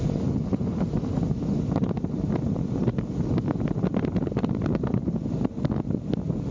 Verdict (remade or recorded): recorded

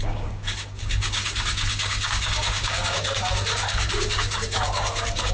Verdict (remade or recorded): remade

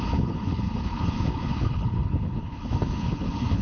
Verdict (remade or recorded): remade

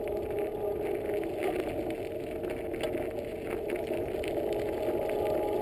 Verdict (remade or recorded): recorded